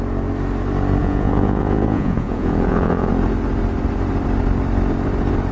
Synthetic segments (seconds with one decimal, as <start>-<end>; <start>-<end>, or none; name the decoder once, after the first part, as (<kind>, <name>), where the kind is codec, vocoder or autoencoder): 1.0-3.1 (vocoder, Vocos)